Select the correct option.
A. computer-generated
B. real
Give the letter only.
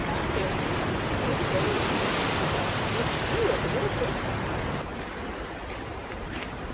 A